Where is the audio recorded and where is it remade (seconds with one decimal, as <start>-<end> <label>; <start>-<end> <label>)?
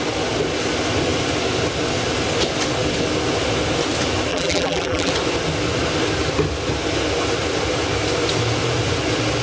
0.0-4.3 recorded; 4.3-5.1 remade; 5.1-9.4 recorded